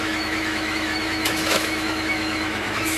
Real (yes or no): no